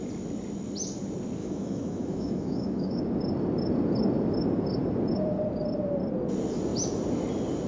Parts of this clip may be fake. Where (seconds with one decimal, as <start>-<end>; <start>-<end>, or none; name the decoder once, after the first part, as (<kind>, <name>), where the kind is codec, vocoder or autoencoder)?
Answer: 1.4-3.0 (autoencoder, DAC-VAE)